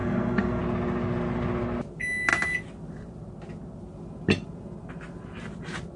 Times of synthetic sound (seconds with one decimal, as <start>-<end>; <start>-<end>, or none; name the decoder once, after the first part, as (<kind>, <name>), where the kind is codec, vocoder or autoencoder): 0.0-0.6 (codec, SNAC)